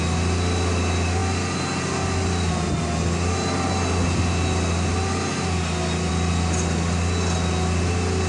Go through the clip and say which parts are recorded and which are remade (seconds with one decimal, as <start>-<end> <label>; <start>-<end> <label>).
0.0-8.3 recorded